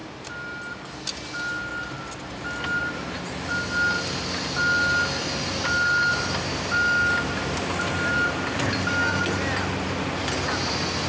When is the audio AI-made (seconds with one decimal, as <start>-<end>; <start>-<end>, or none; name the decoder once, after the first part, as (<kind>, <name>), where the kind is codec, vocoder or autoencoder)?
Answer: none

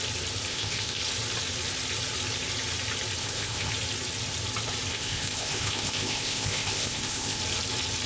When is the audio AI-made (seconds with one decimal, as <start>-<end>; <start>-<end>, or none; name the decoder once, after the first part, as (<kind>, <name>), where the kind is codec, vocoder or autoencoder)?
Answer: 0.5-1.0 (codec, ZipCodec); 3.2-3.7; 4.9-7.4

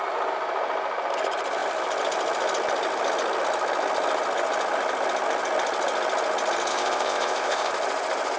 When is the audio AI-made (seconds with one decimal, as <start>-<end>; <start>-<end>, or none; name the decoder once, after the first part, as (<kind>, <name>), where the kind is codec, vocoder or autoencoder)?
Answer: 6.7-7.7 (codec, ZipCodec)

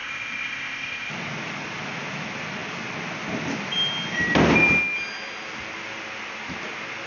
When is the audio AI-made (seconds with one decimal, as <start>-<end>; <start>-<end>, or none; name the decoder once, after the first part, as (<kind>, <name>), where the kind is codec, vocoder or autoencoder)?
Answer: 0.0-1.1 (codec, ZipCodec)

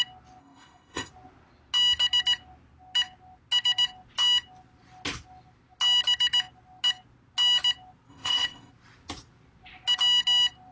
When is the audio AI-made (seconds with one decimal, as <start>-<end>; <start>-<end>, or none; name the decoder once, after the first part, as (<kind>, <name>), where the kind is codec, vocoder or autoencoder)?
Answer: 0.4-1.1 (codec, ZipCodec); 8.1-8.7

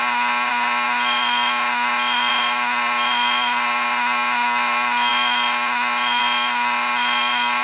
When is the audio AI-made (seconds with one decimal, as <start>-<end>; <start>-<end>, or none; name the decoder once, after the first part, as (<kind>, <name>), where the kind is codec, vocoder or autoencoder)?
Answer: none

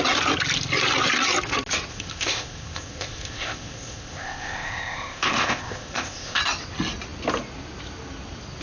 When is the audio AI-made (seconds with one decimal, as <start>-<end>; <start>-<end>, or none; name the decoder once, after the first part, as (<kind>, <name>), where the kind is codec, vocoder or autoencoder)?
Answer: 1.9-6.4 (codec, ZipCodec)